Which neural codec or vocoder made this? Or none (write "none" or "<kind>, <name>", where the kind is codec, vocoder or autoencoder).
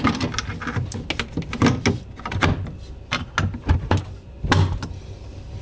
none